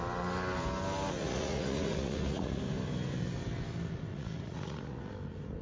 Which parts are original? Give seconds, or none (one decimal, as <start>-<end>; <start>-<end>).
0.0-1.2; 2.6-4.1; 5.1-5.6